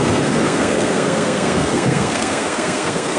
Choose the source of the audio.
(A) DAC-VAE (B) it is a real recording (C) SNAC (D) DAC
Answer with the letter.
C